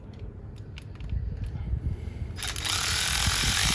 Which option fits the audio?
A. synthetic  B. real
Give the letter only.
B